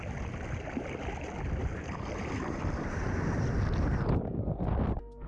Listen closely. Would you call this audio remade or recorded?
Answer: recorded